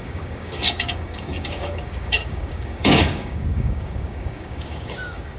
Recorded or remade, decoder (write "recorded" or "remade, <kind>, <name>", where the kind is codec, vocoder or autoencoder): remade, codec, DAC